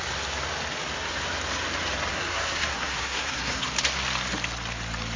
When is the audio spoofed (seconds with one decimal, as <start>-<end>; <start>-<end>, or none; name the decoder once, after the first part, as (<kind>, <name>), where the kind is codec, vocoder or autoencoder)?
2.1-3.6 (codec, SNAC)